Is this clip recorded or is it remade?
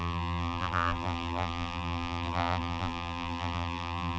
remade